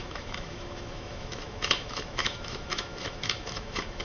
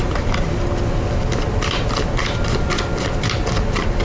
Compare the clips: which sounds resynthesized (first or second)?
first